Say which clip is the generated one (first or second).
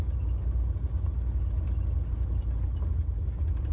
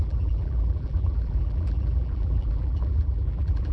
second